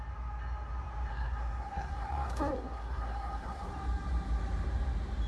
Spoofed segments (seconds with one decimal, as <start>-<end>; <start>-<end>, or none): 1.1-3.7